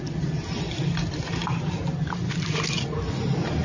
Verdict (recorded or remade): recorded